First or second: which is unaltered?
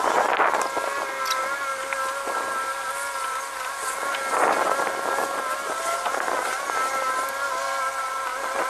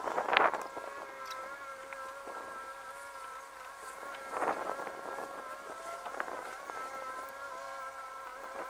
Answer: first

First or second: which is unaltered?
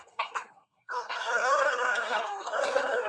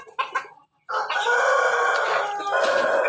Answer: second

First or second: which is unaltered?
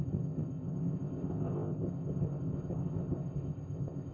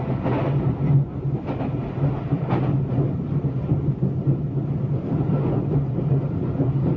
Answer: second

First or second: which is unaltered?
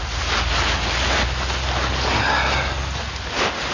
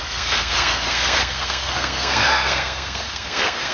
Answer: first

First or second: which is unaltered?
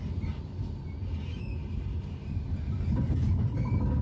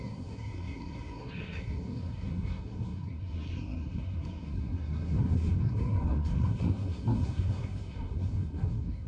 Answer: first